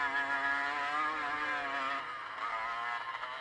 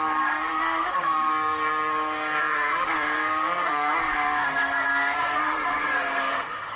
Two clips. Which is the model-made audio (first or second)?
second